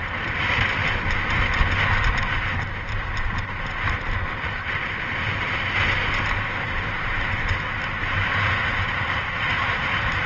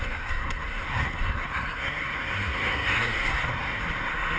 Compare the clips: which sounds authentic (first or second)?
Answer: first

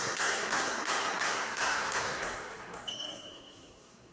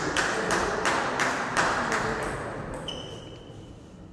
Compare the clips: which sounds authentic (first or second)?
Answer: second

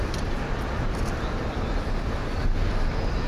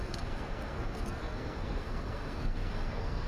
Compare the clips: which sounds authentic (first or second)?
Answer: first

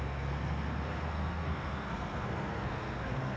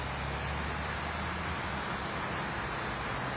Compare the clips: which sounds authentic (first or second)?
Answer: second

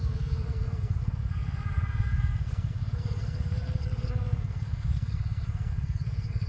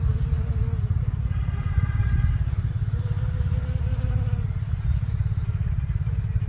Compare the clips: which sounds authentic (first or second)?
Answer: second